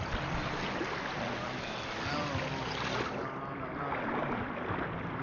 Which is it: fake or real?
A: real